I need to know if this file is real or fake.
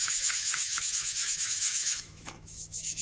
fake